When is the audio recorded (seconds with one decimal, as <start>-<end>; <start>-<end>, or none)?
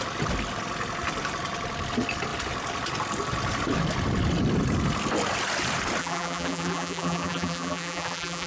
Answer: 0.0-6.0